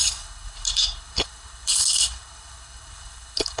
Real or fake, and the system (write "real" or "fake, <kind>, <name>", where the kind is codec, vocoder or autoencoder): fake, codec, HILCodec